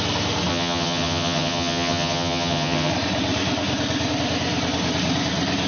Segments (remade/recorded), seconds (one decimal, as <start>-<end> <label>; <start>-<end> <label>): 0.0-0.5 recorded; 0.5-2.9 remade; 2.9-5.7 recorded